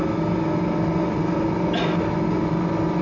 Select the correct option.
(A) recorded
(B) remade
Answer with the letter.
A